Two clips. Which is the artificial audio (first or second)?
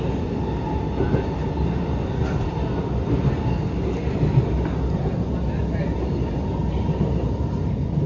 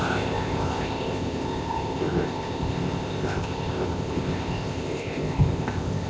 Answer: second